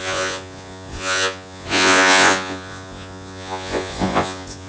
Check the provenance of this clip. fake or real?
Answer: fake